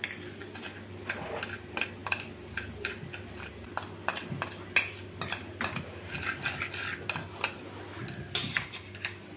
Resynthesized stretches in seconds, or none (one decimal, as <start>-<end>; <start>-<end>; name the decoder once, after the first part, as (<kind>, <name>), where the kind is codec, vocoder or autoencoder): none